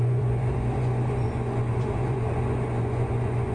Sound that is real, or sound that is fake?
fake